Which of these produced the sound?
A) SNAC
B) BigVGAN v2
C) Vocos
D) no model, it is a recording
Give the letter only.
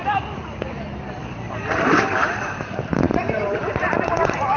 B